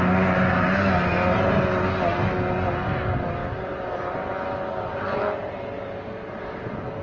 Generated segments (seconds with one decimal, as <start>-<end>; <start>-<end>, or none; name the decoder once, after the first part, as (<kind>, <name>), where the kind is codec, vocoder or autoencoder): none